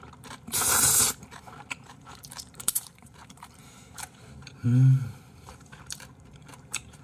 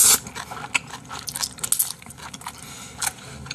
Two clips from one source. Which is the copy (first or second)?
first